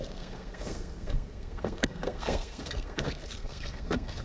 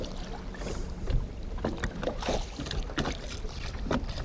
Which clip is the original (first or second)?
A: second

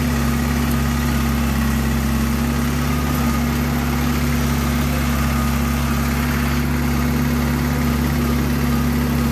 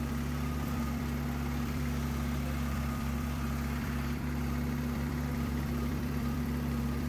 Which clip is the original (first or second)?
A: first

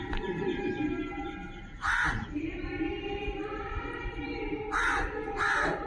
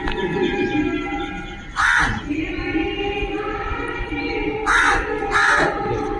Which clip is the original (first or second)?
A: second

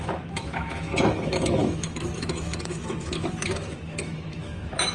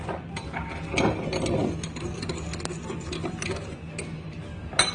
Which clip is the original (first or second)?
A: second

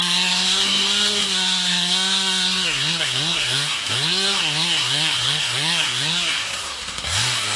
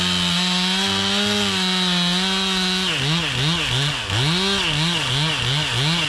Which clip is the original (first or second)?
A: second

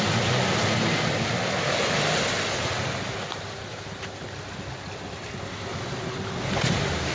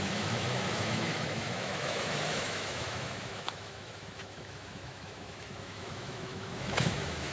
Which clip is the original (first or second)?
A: first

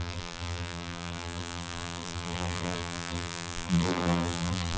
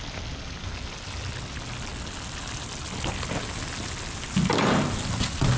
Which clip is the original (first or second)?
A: second